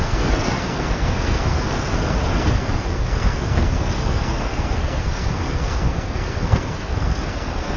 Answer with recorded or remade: remade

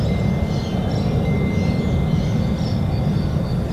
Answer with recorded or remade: recorded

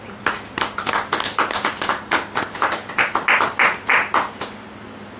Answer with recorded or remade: recorded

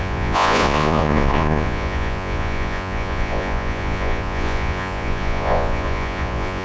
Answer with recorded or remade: remade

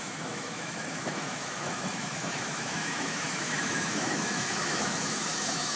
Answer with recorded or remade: remade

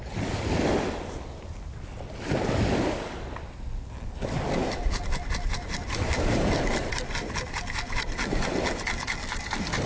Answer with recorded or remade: recorded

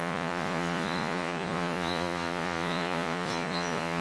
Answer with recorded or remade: remade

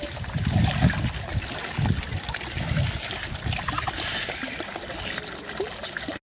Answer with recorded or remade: recorded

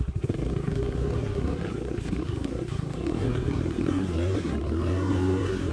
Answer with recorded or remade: remade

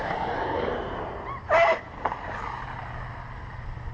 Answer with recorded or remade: recorded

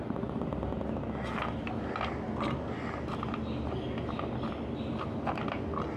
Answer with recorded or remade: recorded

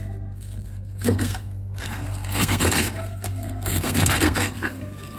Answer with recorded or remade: remade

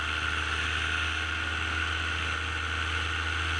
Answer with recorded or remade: recorded